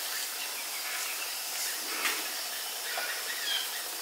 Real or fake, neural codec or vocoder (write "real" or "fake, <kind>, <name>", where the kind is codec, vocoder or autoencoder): real